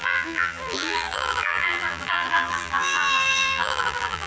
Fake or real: fake